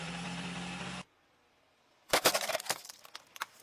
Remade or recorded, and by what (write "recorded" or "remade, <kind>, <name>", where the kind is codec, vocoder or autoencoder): recorded